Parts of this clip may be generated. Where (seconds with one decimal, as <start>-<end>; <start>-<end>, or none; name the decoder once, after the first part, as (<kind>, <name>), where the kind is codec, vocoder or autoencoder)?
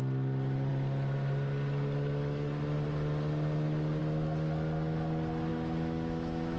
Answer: 5.5-6.6 (autoencoder, DAC-VAE)